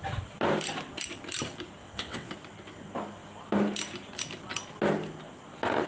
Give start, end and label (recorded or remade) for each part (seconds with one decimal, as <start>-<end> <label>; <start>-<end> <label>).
0.0-1.8 recorded; 1.8-2.3 remade; 2.3-5.9 recorded